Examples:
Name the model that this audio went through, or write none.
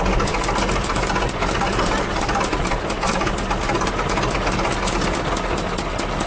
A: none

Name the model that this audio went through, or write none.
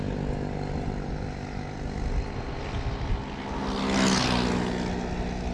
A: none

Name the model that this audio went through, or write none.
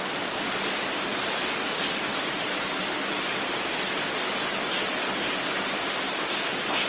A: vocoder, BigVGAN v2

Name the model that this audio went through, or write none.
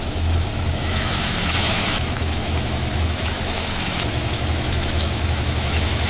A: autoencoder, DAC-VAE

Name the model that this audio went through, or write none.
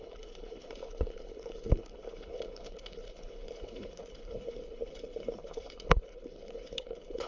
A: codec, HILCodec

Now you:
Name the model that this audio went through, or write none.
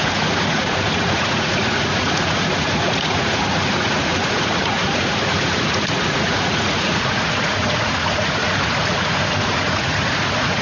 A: vocoder, Vocos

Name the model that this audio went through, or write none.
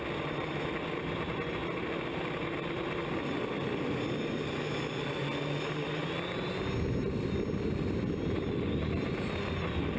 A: none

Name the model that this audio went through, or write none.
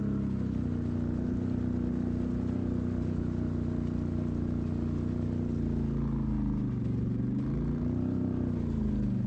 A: none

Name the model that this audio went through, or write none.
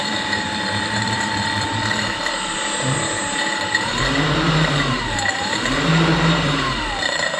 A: vocoder, BigVGAN v2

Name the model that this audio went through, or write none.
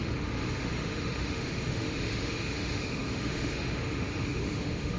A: autoencoder, DAC-VAE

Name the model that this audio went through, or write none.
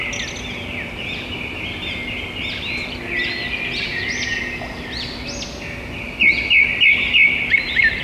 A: none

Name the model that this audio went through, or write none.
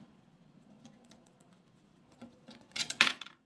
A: vocoder, Vocos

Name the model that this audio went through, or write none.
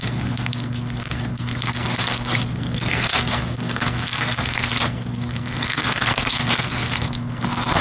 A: codec, SNAC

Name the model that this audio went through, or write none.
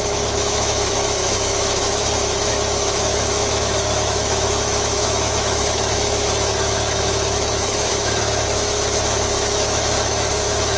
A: autoencoder, DAC-VAE